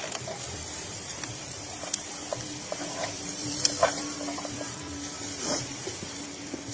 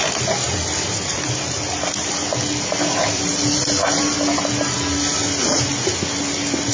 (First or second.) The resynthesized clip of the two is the first